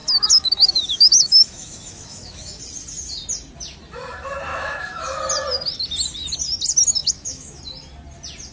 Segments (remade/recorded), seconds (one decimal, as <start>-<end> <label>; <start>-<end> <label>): 0.0-2.6 remade; 2.6-4.5 recorded; 4.5-5.2 remade; 5.2-7.0 recorded; 7.0-7.6 remade; 7.6-8.5 recorded